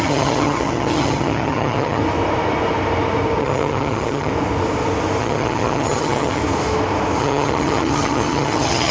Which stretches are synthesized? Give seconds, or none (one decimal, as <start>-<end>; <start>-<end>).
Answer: 0.0-2.0; 3.4-4.3; 5.2-6.4; 7.2-8.9